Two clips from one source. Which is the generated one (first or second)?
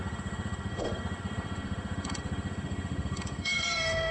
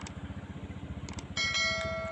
first